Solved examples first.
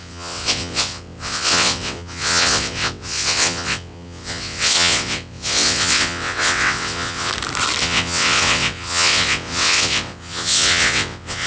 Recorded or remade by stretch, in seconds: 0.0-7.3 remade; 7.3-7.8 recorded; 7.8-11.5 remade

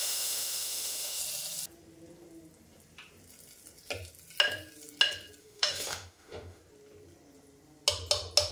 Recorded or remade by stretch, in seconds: 0.0-1.2 remade; 1.2-5.4 recorded; 5.4-6.6 remade; 6.6-8.5 recorded

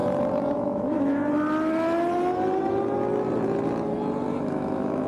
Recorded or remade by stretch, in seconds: 0.0-0.5 recorded; 0.5-1.2 remade; 1.2-4.3 recorded; 4.3-5.1 remade

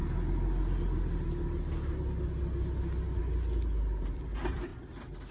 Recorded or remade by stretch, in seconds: 0.0-5.3 recorded